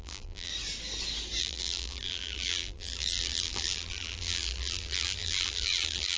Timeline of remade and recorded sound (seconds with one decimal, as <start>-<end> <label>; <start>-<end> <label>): 0.0-0.5 remade; 0.5-1.4 recorded; 1.4-6.2 remade

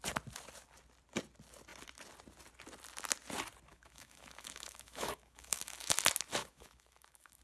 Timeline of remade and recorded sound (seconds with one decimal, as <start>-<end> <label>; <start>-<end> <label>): 0.0-3.7 recorded; 3.7-5.9 remade; 5.9-6.4 recorded; 6.4-7.4 remade

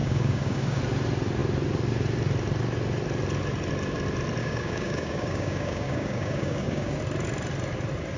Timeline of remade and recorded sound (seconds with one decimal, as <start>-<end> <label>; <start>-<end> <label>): 0.0-0.8 remade; 0.8-4.4 recorded; 4.4-7.0 remade; 7.0-8.2 recorded

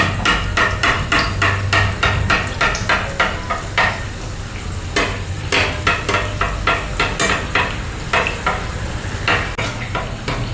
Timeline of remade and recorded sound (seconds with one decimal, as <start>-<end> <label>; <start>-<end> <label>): 0.0-10.5 recorded

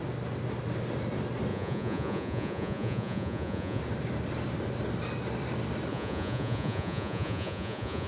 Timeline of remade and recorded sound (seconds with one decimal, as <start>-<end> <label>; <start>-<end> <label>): 0.0-1.5 recorded; 1.5-3.8 remade; 3.8-5.9 recorded; 5.9-8.1 remade

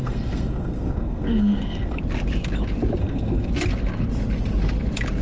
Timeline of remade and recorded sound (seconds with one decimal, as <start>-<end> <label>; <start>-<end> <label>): 0.0-2.0 remade; 2.0-3.0 recorded; 3.0-3.5 remade; 3.5-5.2 recorded

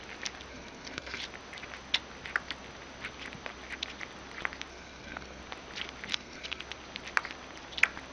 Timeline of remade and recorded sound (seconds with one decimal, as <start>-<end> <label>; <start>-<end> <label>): 0.0-0.5 recorded; 0.5-1.2 remade; 1.2-4.7 recorded; 4.7-5.4 remade; 5.4-6.1 recorded; 6.1-6.6 remade; 6.6-8.1 recorded